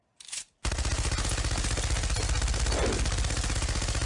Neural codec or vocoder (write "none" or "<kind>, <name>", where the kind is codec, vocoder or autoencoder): none